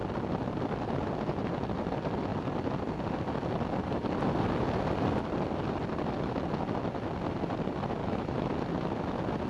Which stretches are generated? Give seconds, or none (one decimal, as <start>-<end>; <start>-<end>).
8.0-8.5